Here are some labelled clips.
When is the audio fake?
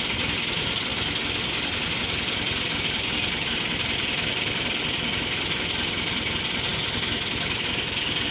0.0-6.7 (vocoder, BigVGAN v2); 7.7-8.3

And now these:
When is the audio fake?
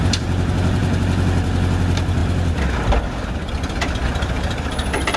0.0-0.8 (vocoder, BigVGAN v2); 1.8-2.2; 3.5-5.2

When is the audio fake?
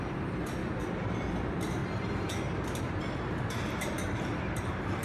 0.0-0.6 (vocoder, BigVGAN v2); 1.4-1.8; 2.9-5.0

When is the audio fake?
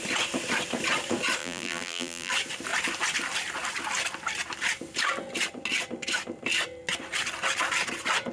1.4-2.3 (vocoder, BigVGAN v2)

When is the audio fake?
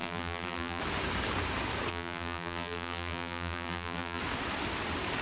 0.0-0.8 (vocoder, BigVGAN v2); 1.9-4.2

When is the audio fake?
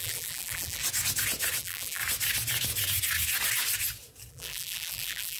0.0-0.8 (vocoder, BigVGAN v2); 1.6-2.0; 4.3-5.4